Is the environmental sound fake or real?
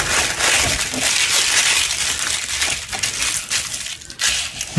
real